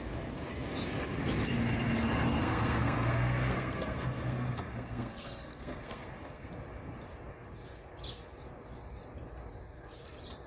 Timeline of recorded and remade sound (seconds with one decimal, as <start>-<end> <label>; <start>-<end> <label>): 0.0-2.3 recorded; 2.3-6.5 remade; 6.5-10.5 recorded